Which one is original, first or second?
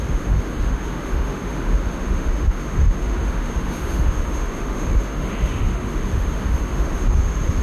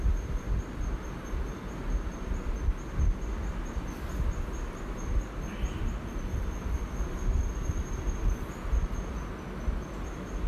second